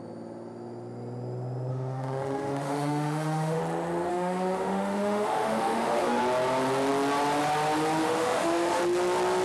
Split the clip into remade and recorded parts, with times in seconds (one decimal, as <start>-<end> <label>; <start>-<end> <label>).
0.0-1.7 recorded; 1.7-3.6 remade; 3.6-4.1 recorded; 4.1-6.2 remade; 6.2-8.0 recorded; 8.0-8.8 remade; 8.8-9.4 recorded